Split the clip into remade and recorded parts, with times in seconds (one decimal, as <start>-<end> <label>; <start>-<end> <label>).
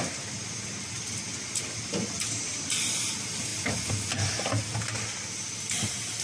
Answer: 0.0-6.2 recorded